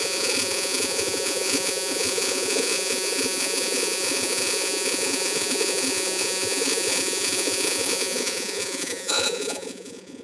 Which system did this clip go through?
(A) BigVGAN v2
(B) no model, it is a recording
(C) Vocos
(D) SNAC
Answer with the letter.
C